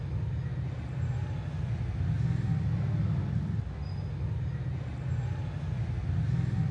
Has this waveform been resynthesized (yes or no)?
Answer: no